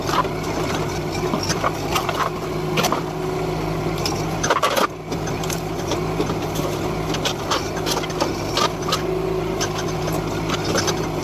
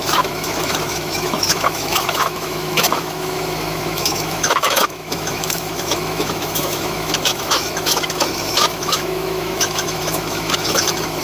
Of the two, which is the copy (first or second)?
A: second